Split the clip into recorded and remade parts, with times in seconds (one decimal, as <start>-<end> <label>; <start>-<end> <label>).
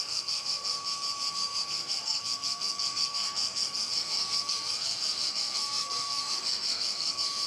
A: 0.0-0.8 remade; 0.8-1.3 recorded; 1.3-7.5 remade